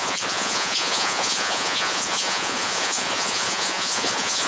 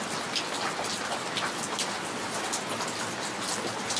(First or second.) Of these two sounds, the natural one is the second